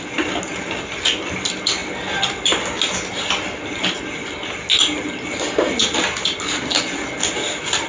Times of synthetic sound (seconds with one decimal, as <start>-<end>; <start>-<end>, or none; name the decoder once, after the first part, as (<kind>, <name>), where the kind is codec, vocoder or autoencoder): none